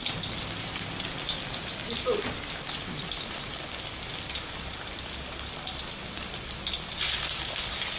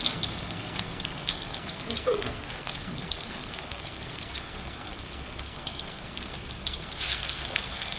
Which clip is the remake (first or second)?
second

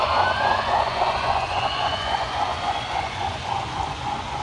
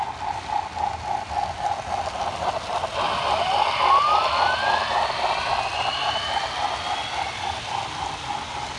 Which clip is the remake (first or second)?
first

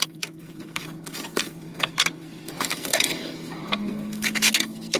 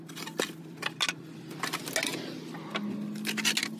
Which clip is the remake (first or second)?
first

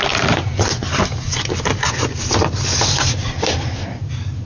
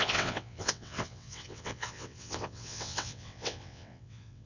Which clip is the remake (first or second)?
second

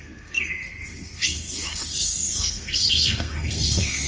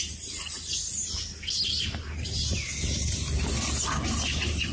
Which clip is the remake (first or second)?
first